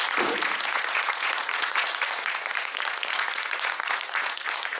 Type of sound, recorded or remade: remade